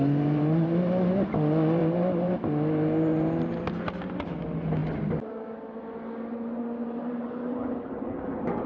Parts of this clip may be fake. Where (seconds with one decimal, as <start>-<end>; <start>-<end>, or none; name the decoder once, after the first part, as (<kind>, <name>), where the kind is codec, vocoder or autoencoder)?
1.8-2.3 (vocoder, BigVGAN v2); 3.1-3.8; 6.8-7.7